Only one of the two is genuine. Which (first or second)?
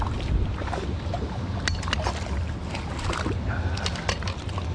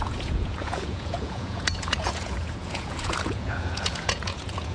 first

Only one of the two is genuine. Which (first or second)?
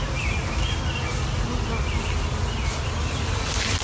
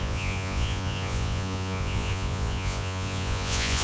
first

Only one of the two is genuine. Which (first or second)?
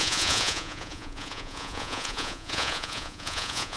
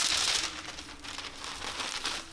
second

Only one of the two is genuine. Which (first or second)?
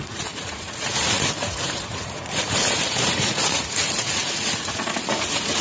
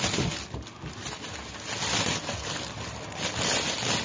second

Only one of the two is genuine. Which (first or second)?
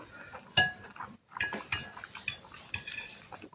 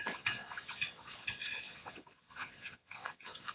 first